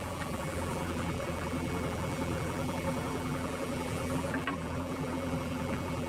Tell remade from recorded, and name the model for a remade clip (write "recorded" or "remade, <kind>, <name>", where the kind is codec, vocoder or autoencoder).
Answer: remade, vocoder, BigVGAN v2